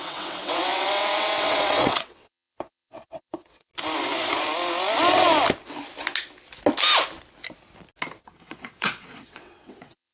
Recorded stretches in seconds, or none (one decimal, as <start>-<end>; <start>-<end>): 3.7-8.2